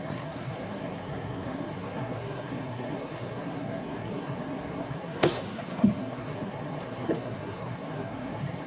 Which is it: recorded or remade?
remade